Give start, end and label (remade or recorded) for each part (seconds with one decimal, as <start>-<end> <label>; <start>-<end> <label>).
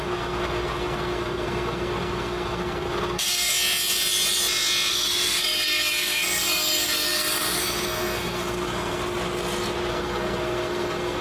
0.0-3.5 remade; 3.5-4.9 recorded; 4.9-9.0 remade; 9.0-9.9 recorded; 9.9-11.2 remade